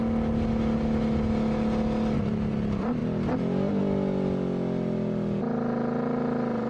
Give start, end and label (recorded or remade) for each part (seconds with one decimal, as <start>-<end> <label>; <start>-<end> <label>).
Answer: 0.0-6.7 recorded

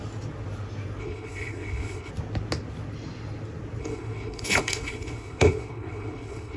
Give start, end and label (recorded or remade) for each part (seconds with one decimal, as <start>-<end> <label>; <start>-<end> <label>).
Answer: 0.0-1.0 recorded; 1.0-2.1 remade; 2.1-3.8 recorded; 3.8-6.6 remade

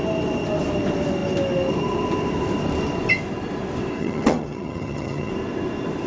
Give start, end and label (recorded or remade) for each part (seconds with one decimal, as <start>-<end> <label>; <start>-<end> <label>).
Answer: 0.0-4.0 recorded; 4.0-5.3 remade; 5.3-6.1 recorded

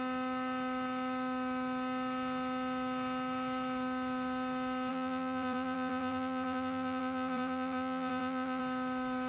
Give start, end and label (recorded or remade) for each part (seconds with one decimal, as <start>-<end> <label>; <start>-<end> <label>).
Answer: 0.0-4.9 recorded; 4.9-8.6 remade; 8.6-9.3 recorded